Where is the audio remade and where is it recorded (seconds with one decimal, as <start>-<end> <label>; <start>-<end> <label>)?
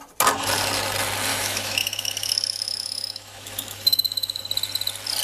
0.0-1.3 recorded; 1.3-4.4 remade; 4.4-5.2 recorded